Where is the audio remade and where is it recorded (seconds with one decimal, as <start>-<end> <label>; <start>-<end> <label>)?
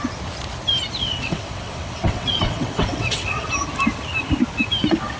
0.0-1.0 recorded; 1.0-3.5 remade; 3.5-5.2 recorded